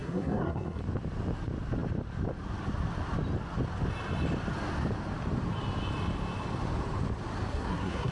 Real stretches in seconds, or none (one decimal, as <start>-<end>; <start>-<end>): 0.8-7.5